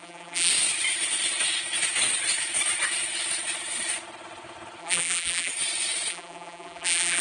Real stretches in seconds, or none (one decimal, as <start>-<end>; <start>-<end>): 0.5-4.8; 5.5-6.1